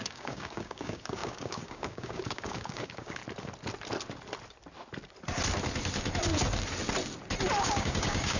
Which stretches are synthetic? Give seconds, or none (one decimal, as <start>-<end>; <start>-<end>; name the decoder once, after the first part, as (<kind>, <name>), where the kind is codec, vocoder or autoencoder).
0.0-3.2 (codec, DAC); 7.6-8.4